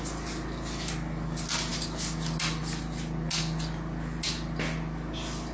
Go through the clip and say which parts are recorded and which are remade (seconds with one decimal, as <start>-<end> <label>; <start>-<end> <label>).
0.0-5.5 recorded